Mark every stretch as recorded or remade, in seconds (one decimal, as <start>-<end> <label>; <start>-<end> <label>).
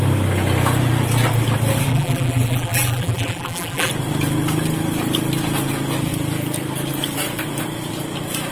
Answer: 0.0-1.9 recorded; 1.9-3.9 remade; 3.9-8.5 recorded